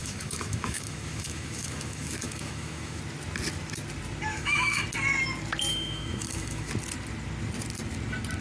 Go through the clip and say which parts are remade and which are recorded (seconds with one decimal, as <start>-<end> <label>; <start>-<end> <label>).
0.0-3.0 remade; 3.0-4.3 recorded; 4.3-4.8 remade; 4.8-5.7 recorded; 5.7-6.7 remade; 6.7-8.4 recorded